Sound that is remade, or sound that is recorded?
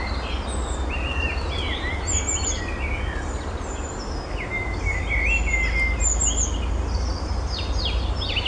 recorded